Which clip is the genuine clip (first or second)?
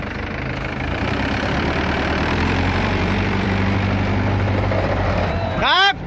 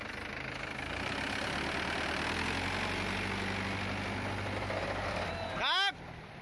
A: second